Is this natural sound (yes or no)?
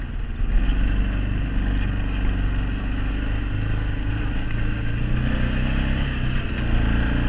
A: yes